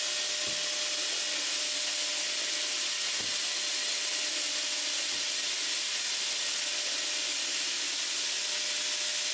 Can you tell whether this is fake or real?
real